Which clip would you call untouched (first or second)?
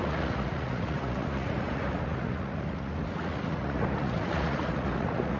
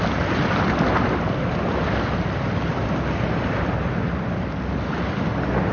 second